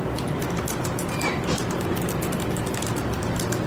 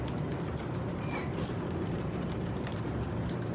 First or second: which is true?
first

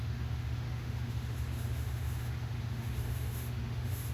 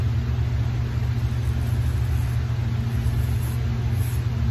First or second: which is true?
second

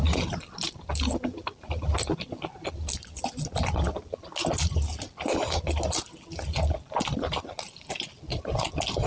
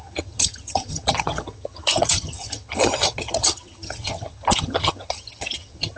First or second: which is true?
first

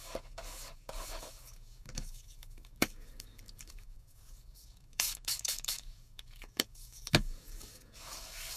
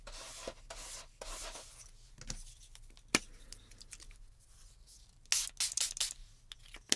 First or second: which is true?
second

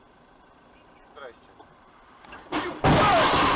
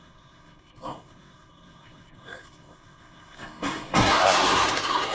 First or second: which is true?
first